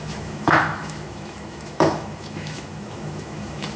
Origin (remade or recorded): remade